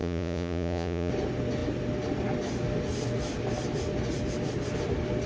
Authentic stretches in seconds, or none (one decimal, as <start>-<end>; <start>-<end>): 1.1-5.3